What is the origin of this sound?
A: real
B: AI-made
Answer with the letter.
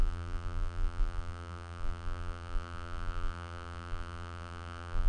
B